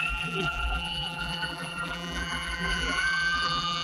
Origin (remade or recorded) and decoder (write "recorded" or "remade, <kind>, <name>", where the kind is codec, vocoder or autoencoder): remade, vocoder, BigVGAN v2